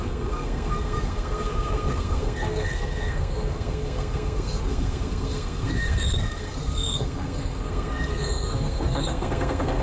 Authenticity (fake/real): fake